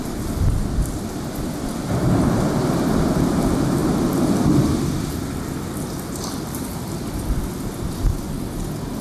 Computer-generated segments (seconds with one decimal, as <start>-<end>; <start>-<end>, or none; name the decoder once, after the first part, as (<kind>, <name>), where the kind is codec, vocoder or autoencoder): none